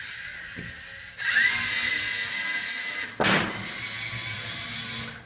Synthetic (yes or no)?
no